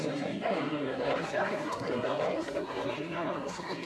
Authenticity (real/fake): fake